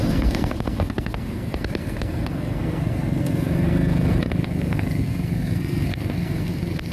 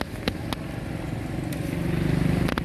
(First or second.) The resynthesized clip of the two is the first